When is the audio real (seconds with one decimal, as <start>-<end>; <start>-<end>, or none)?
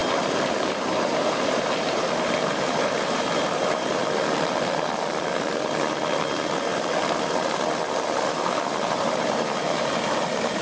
4.0-8.9